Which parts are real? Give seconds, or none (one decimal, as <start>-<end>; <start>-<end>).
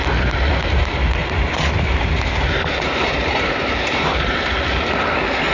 0.0-1.2; 4.5-5.5